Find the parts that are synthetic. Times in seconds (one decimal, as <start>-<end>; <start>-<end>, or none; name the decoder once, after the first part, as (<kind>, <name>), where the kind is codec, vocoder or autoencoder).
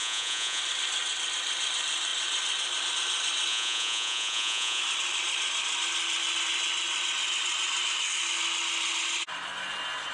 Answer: 0.0-0.6 (vocoder, Vocos); 3.5-4.8